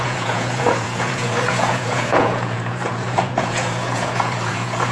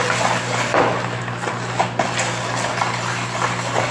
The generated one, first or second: first